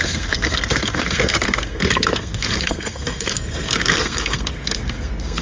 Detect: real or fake fake